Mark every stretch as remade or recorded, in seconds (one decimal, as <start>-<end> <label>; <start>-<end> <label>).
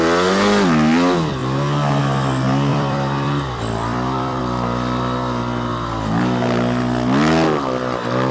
0.0-2.7 recorded; 2.7-4.4 remade; 4.4-5.7 recorded; 5.7-6.2 remade; 6.2-8.3 recorded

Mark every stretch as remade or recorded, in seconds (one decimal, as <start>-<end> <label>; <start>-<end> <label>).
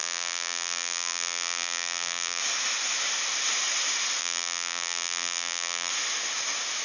0.0-2.4 remade; 2.4-4.2 recorded; 4.2-5.9 remade; 5.9-6.8 recorded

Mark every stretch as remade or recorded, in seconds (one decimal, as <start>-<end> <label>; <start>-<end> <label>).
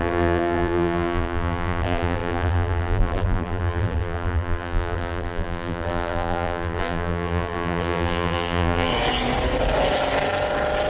0.0-8.9 remade; 8.9-10.9 recorded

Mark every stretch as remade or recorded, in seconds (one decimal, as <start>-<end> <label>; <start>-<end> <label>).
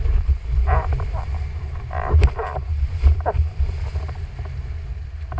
0.0-0.9 recorded; 0.9-2.2 remade; 2.2-2.7 recorded; 2.7-3.6 remade; 3.6-5.4 recorded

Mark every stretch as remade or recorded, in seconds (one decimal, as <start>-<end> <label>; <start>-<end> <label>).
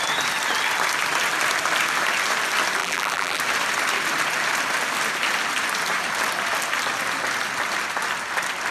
0.0-2.8 recorded; 2.8-3.4 remade; 3.4-8.7 recorded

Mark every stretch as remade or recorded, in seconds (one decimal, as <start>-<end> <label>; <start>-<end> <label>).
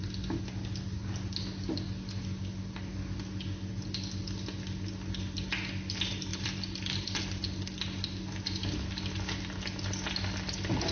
0.0-6.3 recorded; 6.3-7.2 remade; 7.2-10.9 recorded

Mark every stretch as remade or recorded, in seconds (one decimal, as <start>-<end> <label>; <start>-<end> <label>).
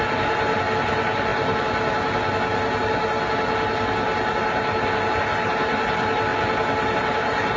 0.0-7.6 recorded